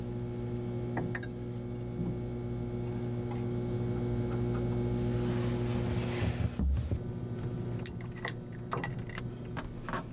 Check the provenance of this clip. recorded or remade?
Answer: recorded